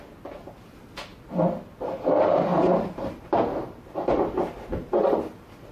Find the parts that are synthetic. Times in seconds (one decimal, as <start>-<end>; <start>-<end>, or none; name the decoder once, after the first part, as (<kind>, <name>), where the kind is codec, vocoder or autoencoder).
2.5-4.5 (vocoder, BigVGAN v2)